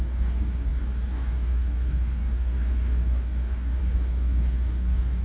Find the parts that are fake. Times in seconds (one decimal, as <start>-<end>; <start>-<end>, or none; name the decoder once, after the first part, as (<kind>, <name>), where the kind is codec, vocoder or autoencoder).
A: 0.0-5.2 (codec, DAC)